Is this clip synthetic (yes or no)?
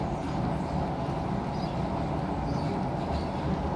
no